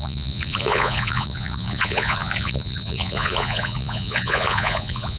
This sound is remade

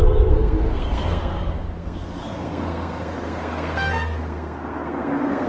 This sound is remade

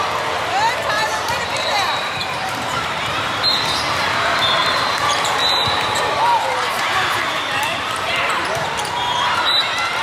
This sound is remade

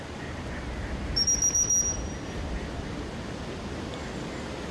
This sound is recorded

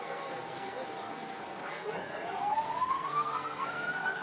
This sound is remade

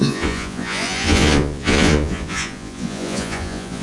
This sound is remade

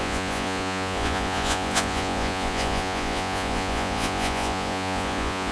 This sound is remade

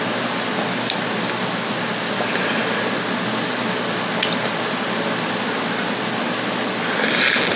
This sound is recorded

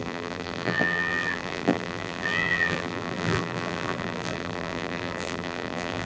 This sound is remade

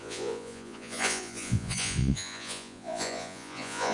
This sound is remade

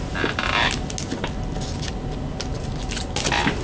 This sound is recorded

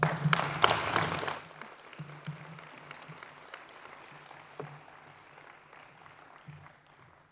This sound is recorded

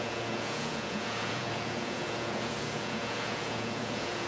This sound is remade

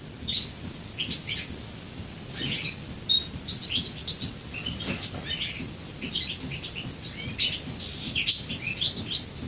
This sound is recorded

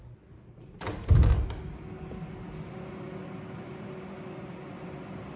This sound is recorded